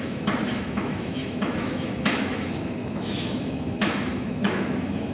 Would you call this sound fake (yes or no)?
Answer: yes